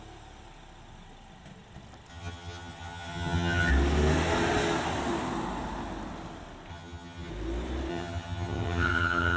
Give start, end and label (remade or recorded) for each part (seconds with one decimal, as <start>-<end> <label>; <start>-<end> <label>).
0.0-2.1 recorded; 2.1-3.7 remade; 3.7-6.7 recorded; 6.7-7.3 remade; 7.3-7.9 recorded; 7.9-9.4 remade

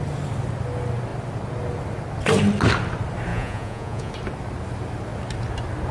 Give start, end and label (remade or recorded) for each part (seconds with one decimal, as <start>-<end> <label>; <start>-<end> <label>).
0.0-3.3 recorded; 3.3-4.1 remade; 4.1-5.9 recorded

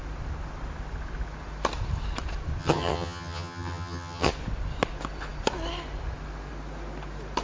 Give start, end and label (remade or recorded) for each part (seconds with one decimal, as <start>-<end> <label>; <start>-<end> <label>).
0.0-2.6 recorded; 2.6-4.3 remade; 4.3-7.4 recorded

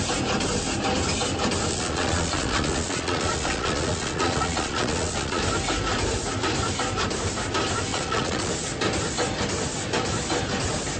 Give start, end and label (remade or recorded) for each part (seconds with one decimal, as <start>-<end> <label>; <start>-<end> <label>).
0.0-1.7 recorded; 1.7-5.4 remade; 5.4-7.9 recorded; 7.9-8.5 remade; 8.5-11.0 recorded